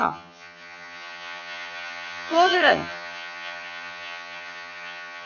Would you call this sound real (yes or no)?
no